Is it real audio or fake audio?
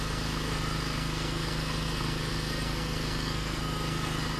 fake